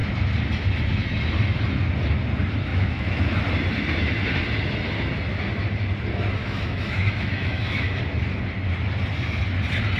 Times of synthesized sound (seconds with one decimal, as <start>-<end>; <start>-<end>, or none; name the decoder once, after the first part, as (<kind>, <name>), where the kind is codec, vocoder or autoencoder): 2.7-3.4 (autoencoder, DAC-VAE); 6.4-8.0